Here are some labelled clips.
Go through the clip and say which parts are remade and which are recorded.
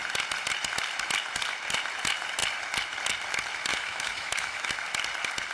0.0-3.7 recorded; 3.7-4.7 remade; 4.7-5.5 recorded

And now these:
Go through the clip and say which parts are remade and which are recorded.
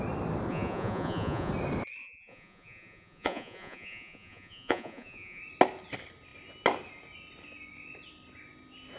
0.0-0.5 recorded; 0.5-1.5 remade; 1.5-2.0 recorded; 2.0-5.4 remade; 5.4-9.0 recorded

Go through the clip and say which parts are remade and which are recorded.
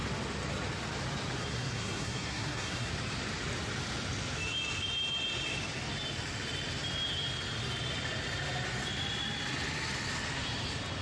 0.0-1.4 recorded; 1.4-2.9 remade; 2.9-11.0 recorded